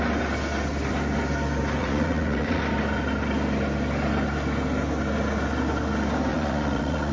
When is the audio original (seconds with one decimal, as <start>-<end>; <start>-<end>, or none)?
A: 0.0-1.8; 2.6-6.3